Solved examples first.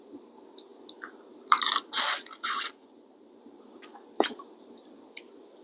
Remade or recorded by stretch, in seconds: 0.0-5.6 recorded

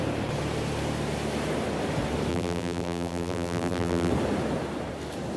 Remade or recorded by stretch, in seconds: 0.0-2.3 recorded; 2.3-4.1 remade; 4.1-5.4 recorded

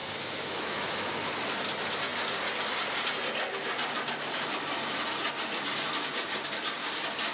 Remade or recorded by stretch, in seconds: 0.0-1.3 remade; 1.3-7.3 recorded

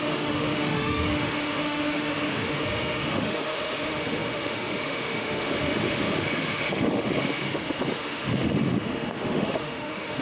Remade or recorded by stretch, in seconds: 0.0-10.2 remade

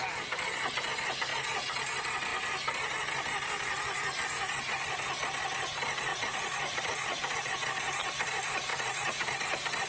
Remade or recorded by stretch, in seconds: 0.0-1.3 recorded; 1.3-1.8 remade; 1.8-6.1 recorded; 6.1-7.5 remade; 7.5-8.7 recorded; 8.7-9.3 remade; 9.3-9.9 recorded